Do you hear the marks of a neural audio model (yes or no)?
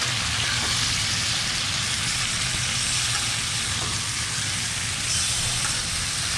no